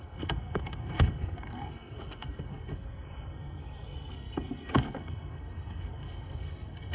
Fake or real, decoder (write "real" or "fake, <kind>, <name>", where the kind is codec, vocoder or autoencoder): fake, codec, SNAC